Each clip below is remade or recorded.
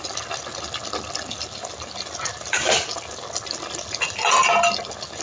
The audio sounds recorded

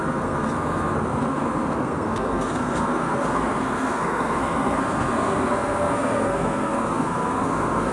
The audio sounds remade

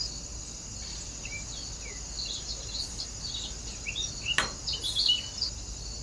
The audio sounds recorded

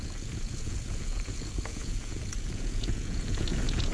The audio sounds remade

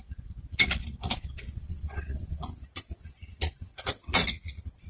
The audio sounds remade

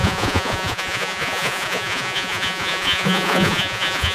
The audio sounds remade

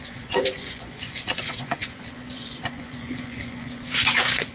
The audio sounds remade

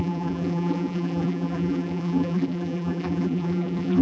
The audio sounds remade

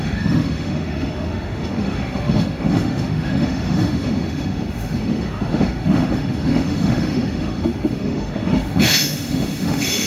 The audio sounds remade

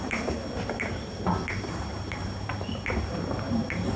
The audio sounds remade